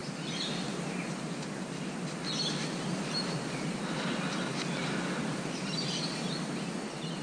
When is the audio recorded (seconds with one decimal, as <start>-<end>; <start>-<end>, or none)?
0.0-7.2